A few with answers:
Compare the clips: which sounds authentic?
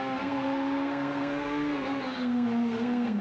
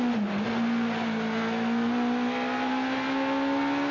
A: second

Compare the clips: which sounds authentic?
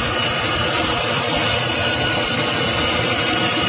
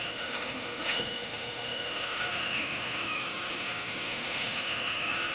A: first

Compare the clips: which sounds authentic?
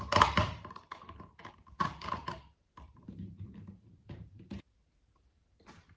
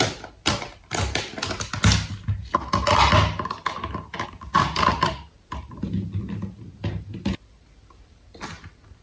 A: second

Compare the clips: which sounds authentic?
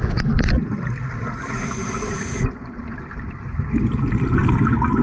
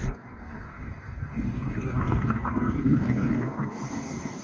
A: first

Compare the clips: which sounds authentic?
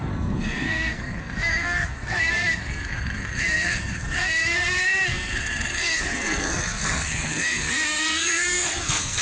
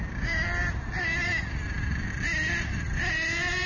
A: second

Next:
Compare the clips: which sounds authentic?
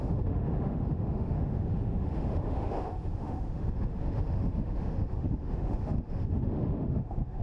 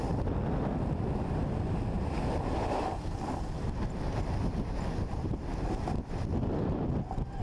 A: second